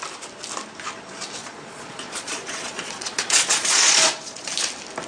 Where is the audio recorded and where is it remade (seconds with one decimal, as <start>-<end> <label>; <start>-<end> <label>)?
0.0-1.4 recorded; 1.4-4.5 remade; 4.5-5.1 recorded